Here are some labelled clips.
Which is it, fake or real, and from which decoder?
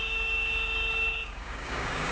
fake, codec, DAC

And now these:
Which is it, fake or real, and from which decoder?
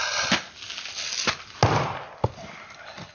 real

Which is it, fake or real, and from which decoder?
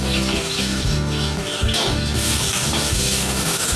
fake, codec, DAC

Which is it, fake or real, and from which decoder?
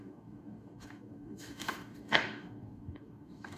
fake, codec, DAC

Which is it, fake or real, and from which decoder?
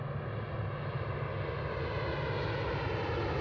real